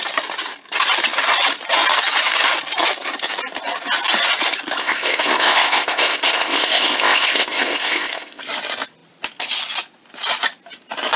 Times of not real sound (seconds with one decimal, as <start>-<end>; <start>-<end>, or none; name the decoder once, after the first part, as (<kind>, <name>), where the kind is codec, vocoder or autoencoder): 4.8-8.4 (codec, ZipCodec)